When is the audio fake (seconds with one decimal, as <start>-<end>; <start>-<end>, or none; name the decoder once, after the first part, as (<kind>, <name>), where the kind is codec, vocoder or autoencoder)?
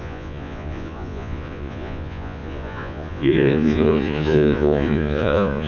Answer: 0.0-5.7 (vocoder, Vocos)